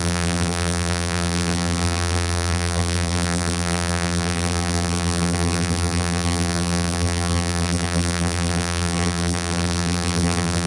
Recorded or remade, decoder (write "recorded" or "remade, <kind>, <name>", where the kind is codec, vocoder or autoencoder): remade, vocoder, BigVGAN v2